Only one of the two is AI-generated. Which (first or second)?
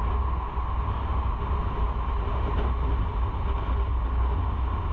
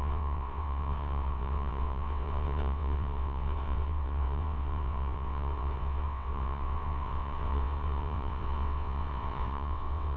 second